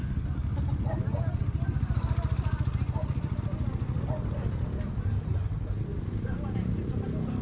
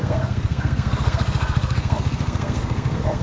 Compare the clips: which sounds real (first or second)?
first